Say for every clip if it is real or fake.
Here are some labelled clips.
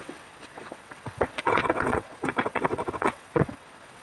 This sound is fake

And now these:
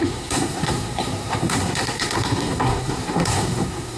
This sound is fake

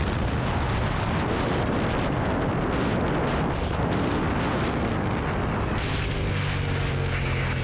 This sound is real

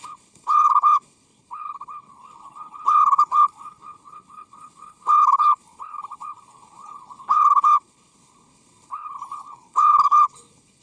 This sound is fake